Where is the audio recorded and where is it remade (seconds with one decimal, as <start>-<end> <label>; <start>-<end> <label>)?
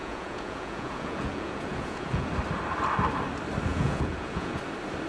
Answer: 0.0-2.3 remade; 2.3-3.7 recorded; 3.7-4.6 remade; 4.6-5.1 recorded